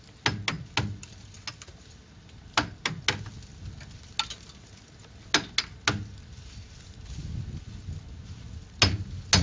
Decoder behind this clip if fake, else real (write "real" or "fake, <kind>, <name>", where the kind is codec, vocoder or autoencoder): real